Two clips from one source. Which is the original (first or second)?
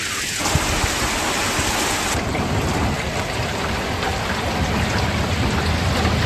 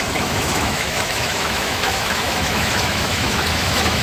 first